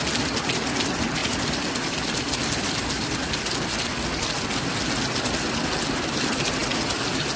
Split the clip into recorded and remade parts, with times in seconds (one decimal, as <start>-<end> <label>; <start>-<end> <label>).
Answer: 0.0-7.4 recorded